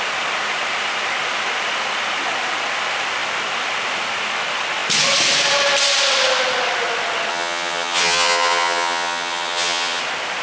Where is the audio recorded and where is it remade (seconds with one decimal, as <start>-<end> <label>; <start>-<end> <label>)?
0.0-7.3 recorded; 7.3-10.0 remade; 10.0-10.4 recorded